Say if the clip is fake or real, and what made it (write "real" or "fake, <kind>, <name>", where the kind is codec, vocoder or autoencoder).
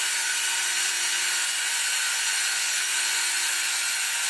fake, vocoder, Vocos